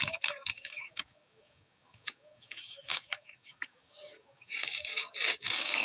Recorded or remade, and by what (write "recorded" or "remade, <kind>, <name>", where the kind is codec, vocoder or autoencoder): remade, codec, DAC